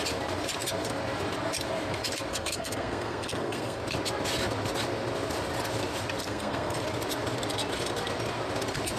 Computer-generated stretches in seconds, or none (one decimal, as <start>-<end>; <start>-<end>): 2.3-3.8; 6.2-6.8